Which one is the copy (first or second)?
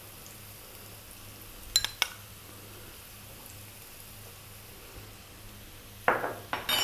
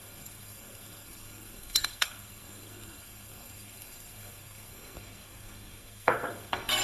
second